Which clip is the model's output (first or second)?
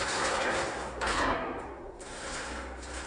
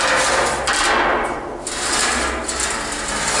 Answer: first